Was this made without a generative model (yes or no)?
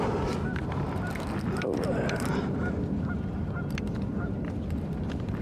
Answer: yes